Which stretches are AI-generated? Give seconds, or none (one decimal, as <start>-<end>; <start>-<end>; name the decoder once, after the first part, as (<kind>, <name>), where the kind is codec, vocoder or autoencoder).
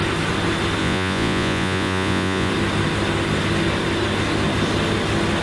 0.8-2.5 (vocoder, Vocos)